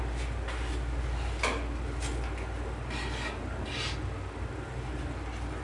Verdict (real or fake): real